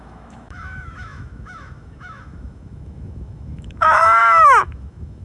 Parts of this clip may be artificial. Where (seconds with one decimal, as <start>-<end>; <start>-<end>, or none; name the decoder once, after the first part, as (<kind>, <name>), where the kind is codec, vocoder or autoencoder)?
0.0-5.2 (autoencoder, DAC-VAE)